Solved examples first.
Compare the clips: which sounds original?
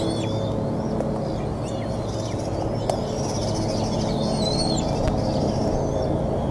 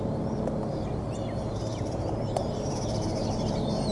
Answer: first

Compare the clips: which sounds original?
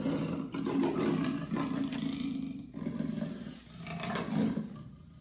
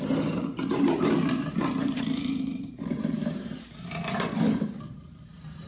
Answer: first